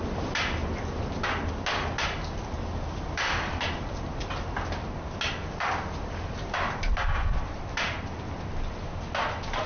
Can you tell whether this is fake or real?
real